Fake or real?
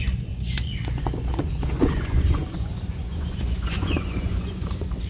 fake